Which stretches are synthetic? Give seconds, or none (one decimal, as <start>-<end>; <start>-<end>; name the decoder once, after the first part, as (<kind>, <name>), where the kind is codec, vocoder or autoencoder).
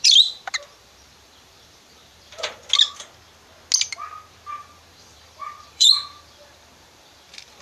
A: 0.0-2.6 (vocoder, BigVGAN v2); 4.6-7.6